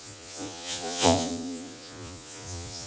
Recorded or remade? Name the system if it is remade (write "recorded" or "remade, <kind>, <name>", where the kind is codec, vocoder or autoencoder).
remade, vocoder, Vocos